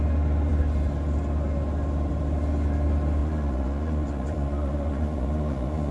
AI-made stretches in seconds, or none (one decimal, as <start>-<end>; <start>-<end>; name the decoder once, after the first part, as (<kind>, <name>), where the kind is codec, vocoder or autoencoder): 3.2-5.9 (vocoder, Vocos)